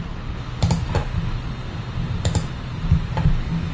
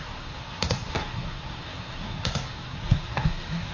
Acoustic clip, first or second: first